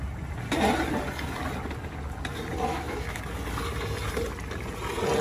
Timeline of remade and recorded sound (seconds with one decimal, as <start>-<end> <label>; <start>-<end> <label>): 0.0-2.7 recorded; 2.7-3.2 remade; 3.2-5.2 recorded